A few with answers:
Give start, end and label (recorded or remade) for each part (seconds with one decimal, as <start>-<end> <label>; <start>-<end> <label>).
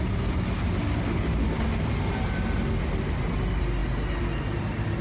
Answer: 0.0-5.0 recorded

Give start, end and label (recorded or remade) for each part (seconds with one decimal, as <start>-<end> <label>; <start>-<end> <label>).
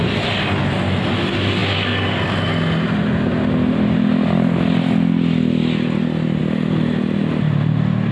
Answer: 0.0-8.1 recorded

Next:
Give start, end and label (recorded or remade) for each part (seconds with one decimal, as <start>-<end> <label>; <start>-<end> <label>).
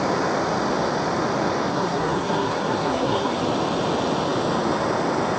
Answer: 0.0-1.7 recorded; 1.7-3.4 remade; 3.4-5.4 recorded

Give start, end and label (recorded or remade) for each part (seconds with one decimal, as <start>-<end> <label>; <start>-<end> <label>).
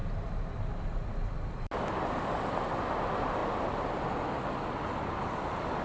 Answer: 0.0-5.8 recorded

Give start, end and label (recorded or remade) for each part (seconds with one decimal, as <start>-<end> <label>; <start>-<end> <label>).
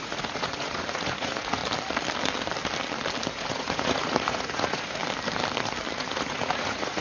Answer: 0.0-1.6 remade; 1.6-3.3 recorded; 3.3-5.0 remade; 5.0-6.0 recorded; 6.0-7.0 remade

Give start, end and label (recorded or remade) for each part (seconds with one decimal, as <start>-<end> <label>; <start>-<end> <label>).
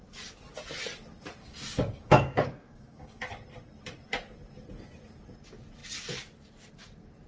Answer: 0.0-1.4 recorded; 1.4-3.2 remade; 3.2-7.3 recorded